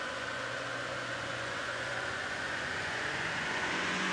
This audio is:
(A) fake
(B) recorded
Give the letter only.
A